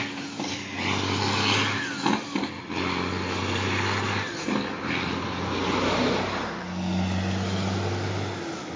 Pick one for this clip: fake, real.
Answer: real